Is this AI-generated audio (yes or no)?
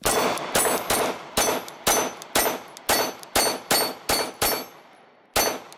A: no